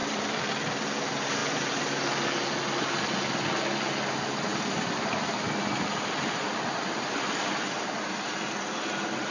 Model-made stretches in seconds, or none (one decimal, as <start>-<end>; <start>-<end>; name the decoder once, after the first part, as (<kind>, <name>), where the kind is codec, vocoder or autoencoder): 0.0-0.5 (vocoder, BigVGAN v2); 4.5-8.5